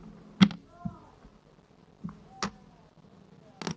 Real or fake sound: real